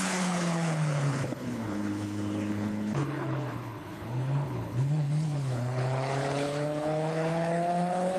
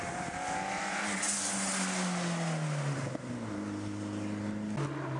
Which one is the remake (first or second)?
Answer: first